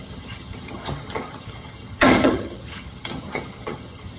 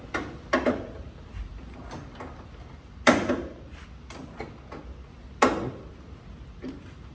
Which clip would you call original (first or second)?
second